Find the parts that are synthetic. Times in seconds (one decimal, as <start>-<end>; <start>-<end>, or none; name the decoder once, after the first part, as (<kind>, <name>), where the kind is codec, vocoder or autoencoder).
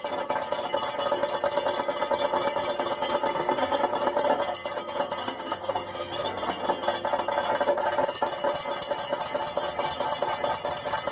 3.3-3.8 (codec, SNAC); 5.2-6.6